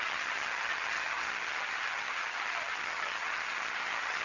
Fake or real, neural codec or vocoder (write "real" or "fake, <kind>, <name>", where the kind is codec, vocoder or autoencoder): fake, vocoder, HiFi-GAN